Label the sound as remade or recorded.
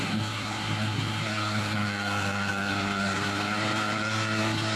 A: remade